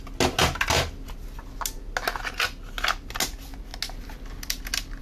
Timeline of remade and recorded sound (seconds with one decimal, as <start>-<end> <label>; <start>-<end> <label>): 0.0-5.0 recorded